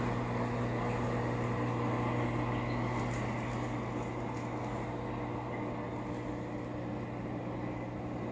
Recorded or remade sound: recorded